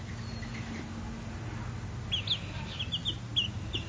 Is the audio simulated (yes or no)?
no